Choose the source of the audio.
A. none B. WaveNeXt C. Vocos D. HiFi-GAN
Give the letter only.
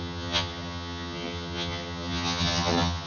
D